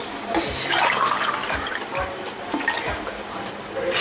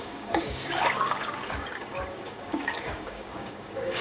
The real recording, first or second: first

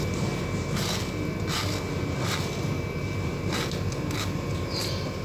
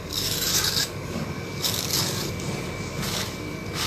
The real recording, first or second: first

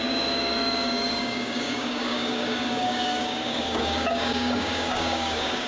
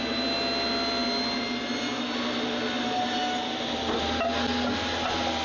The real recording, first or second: second